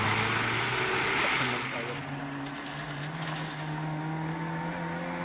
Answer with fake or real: real